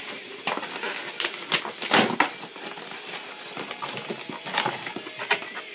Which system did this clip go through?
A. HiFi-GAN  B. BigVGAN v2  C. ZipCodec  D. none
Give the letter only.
D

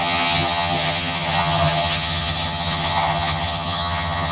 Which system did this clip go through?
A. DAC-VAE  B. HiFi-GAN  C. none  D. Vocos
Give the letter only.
B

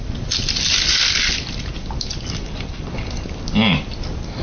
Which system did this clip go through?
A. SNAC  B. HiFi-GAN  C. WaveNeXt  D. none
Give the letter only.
D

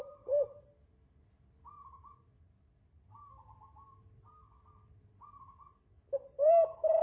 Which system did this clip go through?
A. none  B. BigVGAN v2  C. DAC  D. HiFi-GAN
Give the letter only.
A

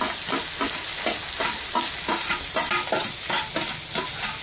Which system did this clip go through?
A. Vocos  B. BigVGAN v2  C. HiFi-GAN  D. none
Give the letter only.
D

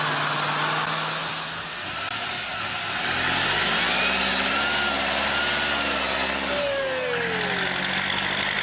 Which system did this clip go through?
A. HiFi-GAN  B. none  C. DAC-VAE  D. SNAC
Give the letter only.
B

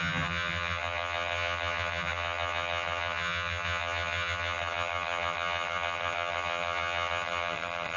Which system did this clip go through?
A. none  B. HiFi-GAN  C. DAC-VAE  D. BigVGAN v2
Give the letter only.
B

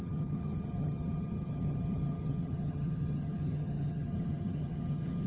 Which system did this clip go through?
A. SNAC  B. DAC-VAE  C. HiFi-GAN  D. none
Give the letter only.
C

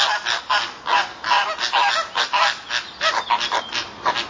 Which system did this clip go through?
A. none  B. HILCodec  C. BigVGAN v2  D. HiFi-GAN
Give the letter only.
A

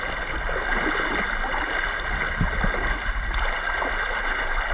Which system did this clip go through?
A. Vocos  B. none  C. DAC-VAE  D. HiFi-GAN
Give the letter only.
B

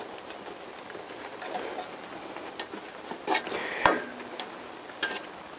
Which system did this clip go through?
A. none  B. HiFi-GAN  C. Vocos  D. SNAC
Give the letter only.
A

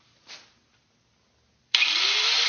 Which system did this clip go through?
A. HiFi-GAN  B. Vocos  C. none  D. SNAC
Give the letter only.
C